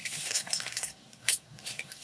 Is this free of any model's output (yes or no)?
no